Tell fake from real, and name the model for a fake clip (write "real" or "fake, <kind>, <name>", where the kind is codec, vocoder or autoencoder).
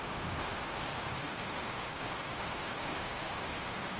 fake, autoencoder, DAC-VAE